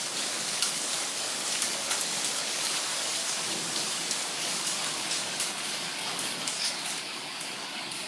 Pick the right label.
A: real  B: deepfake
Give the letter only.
B